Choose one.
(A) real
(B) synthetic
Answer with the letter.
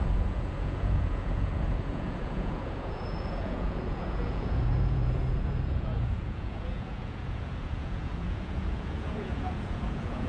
B